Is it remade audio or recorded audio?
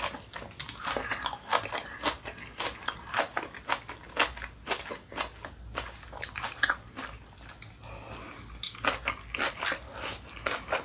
recorded